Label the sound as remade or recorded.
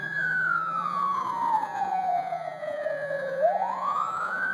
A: remade